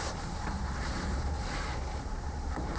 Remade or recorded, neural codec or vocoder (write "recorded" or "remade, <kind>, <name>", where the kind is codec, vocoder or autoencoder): remade, vocoder, BigVGAN v2